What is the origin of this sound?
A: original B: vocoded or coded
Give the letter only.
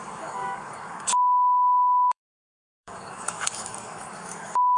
B